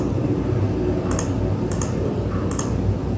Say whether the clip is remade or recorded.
recorded